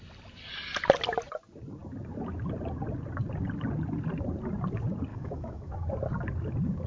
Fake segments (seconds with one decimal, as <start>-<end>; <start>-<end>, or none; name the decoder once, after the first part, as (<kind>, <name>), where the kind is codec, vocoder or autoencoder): 5.1-5.7 (autoencoder, DAC-VAE)